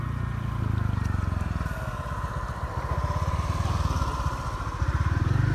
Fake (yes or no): no